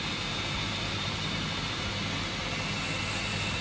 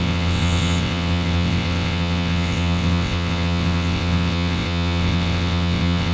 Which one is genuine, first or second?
first